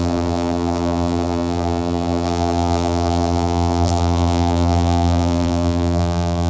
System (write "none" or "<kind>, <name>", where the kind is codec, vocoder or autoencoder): vocoder, BigVGAN v2